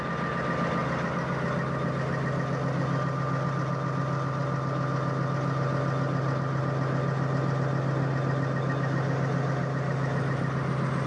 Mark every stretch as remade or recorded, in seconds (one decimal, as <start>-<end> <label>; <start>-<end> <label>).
0.0-11.1 recorded